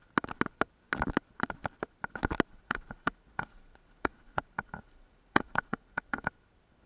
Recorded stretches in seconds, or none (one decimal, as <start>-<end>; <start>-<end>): 0.0-2.5; 6.3-6.9